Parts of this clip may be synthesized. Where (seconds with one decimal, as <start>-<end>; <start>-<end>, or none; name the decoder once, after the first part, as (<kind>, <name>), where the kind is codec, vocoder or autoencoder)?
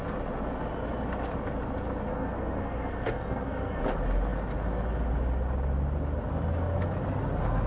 2.1-3.8 (codec, SNAC)